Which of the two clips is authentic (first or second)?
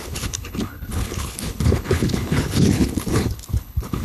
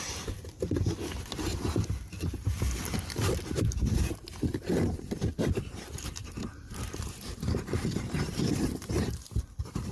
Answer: second